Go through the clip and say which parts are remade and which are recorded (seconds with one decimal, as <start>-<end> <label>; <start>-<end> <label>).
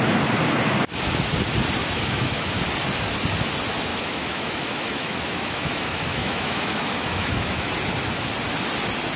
0.0-1.8 recorded; 1.8-2.6 remade; 2.6-3.9 recorded; 3.9-7.7 remade; 7.7-9.2 recorded